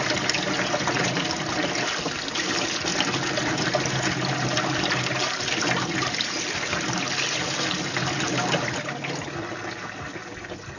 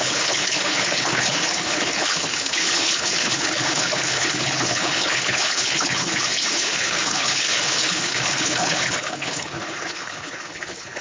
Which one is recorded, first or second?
first